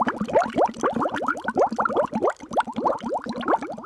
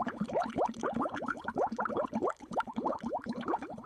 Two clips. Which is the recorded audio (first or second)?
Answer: first